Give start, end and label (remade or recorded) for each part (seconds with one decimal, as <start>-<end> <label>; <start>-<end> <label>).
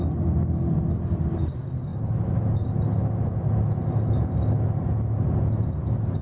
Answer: 0.0-6.2 recorded